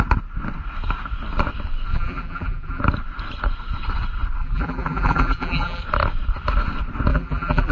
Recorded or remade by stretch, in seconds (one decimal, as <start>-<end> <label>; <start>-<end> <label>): 0.0-1.9 recorded; 1.9-2.8 remade; 2.8-4.4 recorded; 4.4-5.8 remade; 5.8-7.1 recorded; 7.1-7.7 remade